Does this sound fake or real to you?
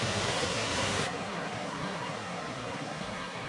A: fake